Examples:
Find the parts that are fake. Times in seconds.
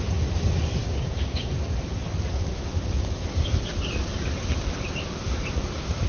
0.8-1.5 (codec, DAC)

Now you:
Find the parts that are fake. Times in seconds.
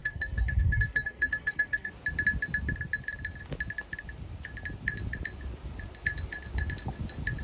0.0-1.9 (codec, SNAC)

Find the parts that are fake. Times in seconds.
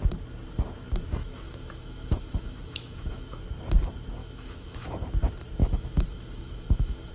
1.2-3.4 (autoencoder, DAC-VAE); 4.2-4.9; 5.6-7.1